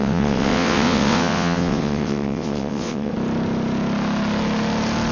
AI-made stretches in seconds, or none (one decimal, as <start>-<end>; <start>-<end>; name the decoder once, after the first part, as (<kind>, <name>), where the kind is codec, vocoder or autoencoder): 0.0-3.1 (vocoder, WaveNeXt)